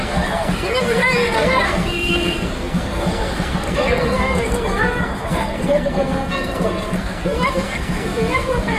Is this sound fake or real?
fake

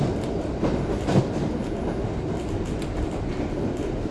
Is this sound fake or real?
real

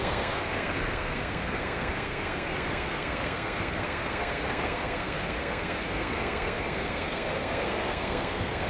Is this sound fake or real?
fake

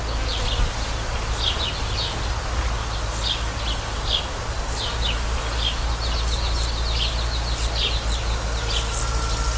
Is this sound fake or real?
real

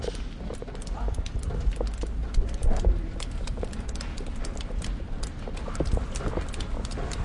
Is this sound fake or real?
real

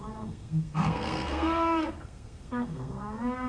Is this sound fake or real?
fake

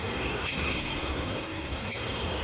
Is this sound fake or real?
fake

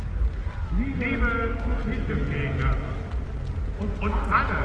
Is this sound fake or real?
real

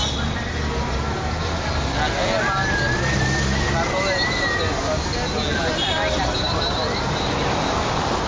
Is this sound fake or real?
real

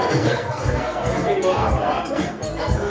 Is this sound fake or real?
fake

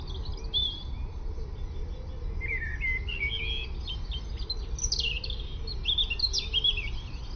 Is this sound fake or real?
real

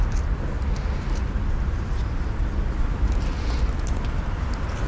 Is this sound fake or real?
real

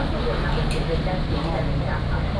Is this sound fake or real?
real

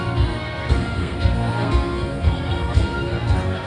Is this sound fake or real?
fake